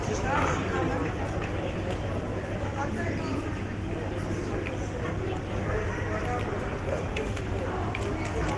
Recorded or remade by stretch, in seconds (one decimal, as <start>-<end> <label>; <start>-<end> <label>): 0.0-6.9 recorded; 6.9-7.4 remade; 7.4-8.6 recorded